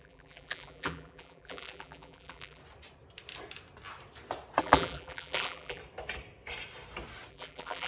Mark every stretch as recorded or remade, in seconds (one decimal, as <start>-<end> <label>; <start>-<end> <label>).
0.0-2.6 remade; 2.6-4.6 recorded; 4.6-5.8 remade; 5.8-7.3 recorded; 7.3-7.9 remade